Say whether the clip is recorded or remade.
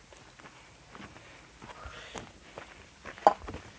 recorded